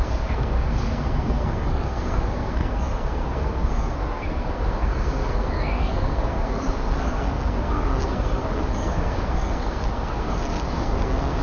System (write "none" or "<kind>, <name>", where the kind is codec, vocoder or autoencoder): codec, SNAC